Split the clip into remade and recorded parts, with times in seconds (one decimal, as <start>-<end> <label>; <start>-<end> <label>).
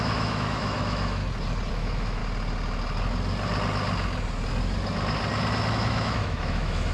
0.0-1.2 remade; 1.2-1.7 recorded; 1.7-2.2 remade; 2.2-5.7 recorded; 5.7-6.9 remade